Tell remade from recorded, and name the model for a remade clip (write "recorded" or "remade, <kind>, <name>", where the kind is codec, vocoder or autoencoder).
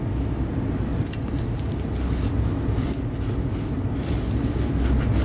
recorded